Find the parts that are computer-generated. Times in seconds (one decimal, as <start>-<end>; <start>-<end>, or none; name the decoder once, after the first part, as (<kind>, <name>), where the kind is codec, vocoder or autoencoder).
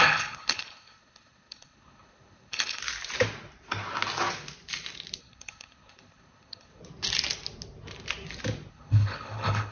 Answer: 0.0-2.8 (codec, HILCodec); 5.2-6.8; 8.7-9.7